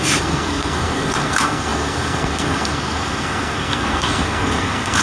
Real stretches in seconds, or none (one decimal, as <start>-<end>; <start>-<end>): none